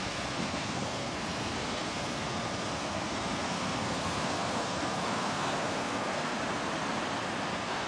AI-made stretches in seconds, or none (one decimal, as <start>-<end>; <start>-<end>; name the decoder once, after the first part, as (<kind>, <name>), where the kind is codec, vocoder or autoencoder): 0.0-6.4 (codec, SNAC); 7.5-7.9